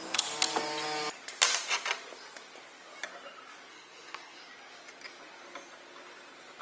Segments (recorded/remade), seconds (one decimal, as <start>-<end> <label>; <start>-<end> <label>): 0.0-3.7 recorded; 3.7-4.4 remade; 4.4-6.6 recorded